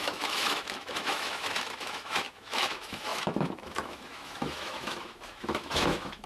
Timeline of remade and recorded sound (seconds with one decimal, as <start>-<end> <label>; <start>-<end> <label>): 0.0-6.3 remade